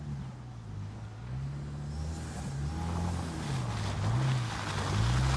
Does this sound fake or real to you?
real